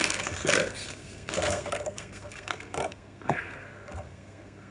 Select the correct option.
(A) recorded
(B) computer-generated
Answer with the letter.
B